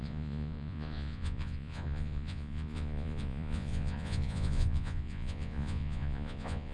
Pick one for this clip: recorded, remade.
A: remade